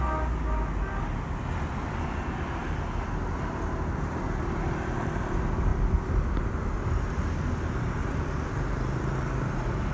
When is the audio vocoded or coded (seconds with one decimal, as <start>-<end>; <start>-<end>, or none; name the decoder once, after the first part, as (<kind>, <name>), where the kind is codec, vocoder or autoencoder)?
none

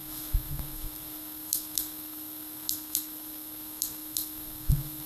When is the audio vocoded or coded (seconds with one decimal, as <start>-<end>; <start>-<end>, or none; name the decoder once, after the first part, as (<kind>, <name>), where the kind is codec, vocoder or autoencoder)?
0.0-5.1 (codec, SNAC)

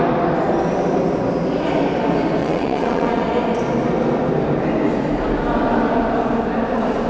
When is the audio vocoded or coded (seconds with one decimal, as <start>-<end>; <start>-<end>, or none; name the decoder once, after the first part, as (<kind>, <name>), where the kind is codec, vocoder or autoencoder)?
2.4-3.2 (vocoder, WaveNeXt)

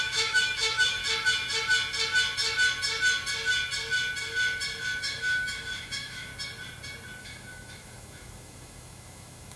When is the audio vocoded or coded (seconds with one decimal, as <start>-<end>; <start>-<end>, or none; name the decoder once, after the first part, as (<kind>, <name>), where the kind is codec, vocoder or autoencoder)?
0.0-1.0 (autoencoder, DAC-VAE); 5.0-6.3; 7.2-9.6

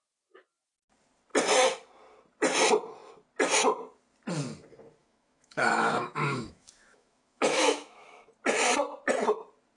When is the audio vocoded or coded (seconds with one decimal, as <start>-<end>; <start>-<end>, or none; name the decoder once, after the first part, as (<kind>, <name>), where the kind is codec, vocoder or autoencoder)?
5.0-8.3 (autoencoder, DAC-VAE)

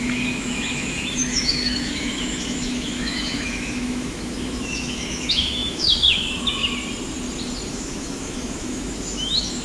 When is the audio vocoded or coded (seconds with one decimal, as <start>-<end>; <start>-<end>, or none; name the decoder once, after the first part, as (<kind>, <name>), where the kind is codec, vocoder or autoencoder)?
0.0-6.6 (autoencoder, DAC-VAE); 7.7-9.6

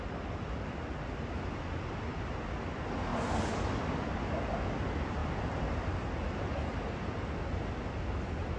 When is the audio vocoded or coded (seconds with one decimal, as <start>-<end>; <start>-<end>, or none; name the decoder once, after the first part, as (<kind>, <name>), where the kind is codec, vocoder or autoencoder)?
none

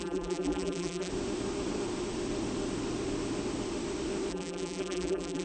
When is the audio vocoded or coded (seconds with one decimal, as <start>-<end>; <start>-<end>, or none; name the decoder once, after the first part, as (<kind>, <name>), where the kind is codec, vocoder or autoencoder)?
0.0-1.1 (vocoder, BigVGAN v2); 4.3-5.4